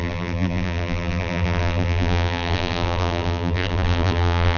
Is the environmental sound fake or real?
fake